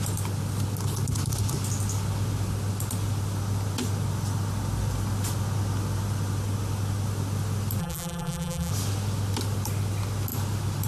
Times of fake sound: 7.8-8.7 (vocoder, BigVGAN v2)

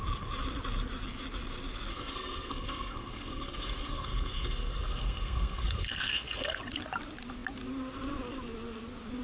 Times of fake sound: 1.9-6.6 (codec, SNAC)

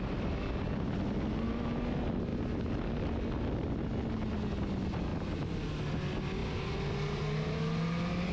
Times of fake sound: none

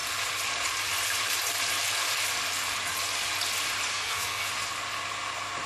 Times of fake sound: 3.9-4.5 (codec, SNAC)